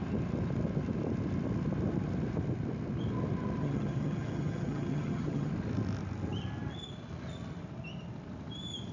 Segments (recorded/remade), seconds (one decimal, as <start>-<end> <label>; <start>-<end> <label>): 0.0-3.6 recorded; 3.6-5.5 remade; 5.5-8.9 recorded